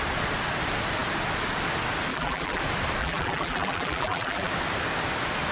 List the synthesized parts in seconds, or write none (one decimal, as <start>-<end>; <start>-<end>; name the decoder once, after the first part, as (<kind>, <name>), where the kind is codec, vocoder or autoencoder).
2.1-2.6 (vocoder, BigVGAN v2); 3.0-4.5